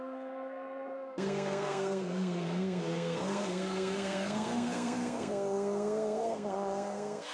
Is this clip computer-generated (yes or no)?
yes